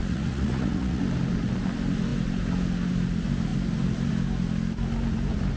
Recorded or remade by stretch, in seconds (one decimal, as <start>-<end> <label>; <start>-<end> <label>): 0.0-1.0 remade; 1.0-5.6 recorded